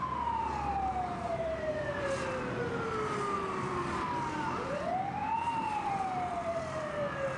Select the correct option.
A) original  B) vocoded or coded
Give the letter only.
A